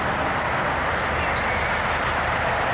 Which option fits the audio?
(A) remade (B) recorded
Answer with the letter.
B